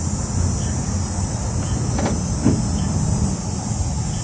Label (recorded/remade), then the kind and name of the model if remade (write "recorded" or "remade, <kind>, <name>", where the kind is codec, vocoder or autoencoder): recorded